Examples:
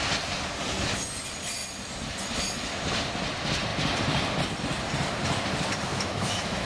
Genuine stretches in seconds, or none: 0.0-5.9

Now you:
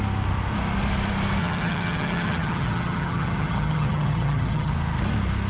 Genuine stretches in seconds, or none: 0.0-1.4; 4.7-5.5

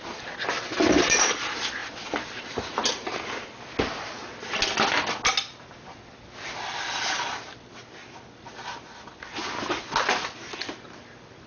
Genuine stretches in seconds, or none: 0.0-11.5